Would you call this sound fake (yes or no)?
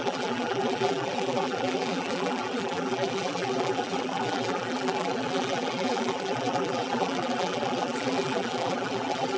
yes